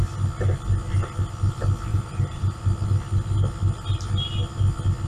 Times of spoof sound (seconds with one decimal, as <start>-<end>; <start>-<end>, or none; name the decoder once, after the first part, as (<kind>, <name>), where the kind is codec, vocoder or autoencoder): 1.9-2.6 (vocoder, BigVGAN v2)

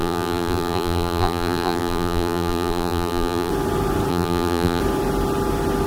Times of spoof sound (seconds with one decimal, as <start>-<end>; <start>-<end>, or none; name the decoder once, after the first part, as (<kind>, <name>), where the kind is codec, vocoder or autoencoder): 0.0-3.5 (vocoder, BigVGAN v2); 4.1-4.8

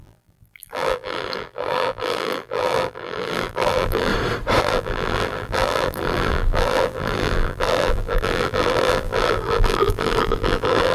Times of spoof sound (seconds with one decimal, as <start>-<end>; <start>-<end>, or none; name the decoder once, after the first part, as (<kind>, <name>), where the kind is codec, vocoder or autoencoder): 0.0-4.1 (vocoder, BigVGAN v2); 4.6-10.9

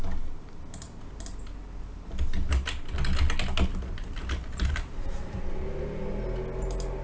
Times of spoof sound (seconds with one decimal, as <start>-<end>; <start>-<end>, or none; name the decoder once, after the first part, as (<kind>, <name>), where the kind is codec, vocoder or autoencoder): 3.7-5.4 (vocoder, BigVGAN v2)

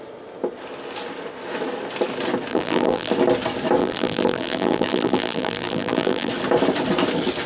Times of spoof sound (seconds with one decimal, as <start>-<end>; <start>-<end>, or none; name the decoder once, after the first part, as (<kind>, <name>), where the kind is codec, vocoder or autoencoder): 2.5-3.1 (vocoder, BigVGAN v2); 3.8-6.3

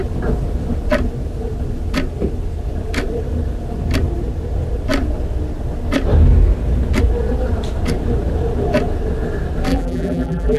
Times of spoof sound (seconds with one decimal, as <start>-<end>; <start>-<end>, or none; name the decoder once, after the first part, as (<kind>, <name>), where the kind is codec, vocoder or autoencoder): 9.7-10.6 (vocoder, BigVGAN v2)